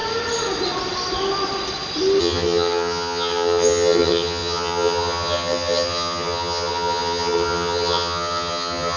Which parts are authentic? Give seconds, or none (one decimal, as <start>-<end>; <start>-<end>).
0.0-2.2